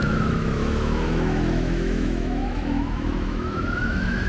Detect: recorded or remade remade